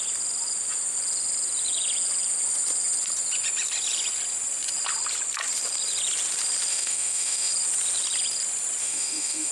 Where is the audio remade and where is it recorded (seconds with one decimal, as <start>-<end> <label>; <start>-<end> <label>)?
0.0-6.7 recorded; 6.7-7.5 remade; 7.5-8.8 recorded; 8.8-9.5 remade